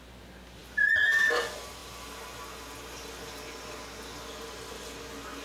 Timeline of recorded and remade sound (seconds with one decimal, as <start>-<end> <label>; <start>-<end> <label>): 0.0-5.4 recorded